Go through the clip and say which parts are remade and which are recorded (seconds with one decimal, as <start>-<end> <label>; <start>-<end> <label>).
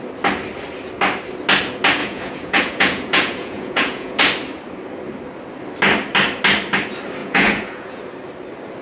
0.0-2.0 recorded; 2.0-4.2 remade; 4.2-7.2 recorded; 7.2-8.0 remade; 8.0-8.8 recorded